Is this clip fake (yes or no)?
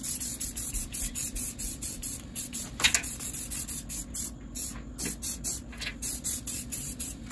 no